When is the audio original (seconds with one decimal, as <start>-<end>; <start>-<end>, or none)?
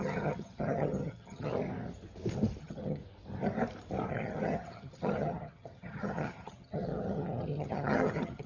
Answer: 1.5-2.6; 3.0-4.1